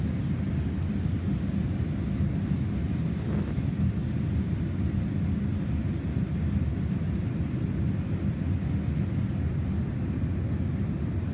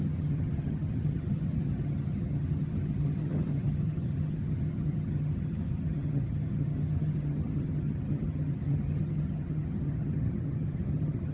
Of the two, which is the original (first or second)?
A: first